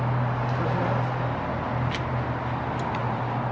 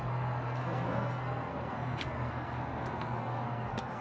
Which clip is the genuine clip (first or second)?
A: first